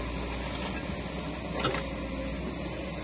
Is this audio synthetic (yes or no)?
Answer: no